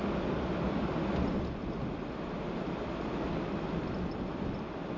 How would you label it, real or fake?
real